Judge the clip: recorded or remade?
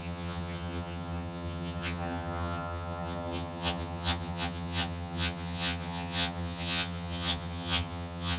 remade